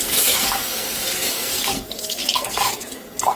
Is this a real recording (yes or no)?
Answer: no